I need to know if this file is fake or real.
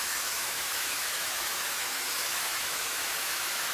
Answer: fake